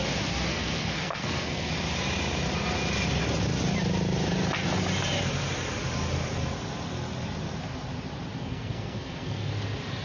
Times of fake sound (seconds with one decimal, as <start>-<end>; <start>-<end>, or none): 0.5-1.7; 8.4-9.5